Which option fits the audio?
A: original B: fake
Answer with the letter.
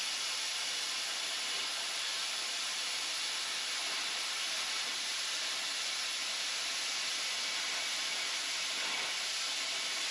B